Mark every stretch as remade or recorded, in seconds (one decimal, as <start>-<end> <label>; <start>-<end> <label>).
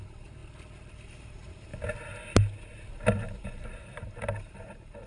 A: 0.0-0.4 remade; 0.4-0.9 recorded; 0.9-1.7 remade; 1.7-2.9 recorded; 2.9-5.1 remade